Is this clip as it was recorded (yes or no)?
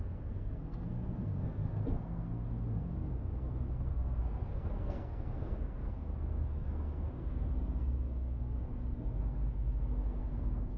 no